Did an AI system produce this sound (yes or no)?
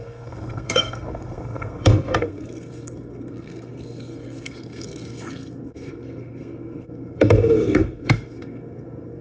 yes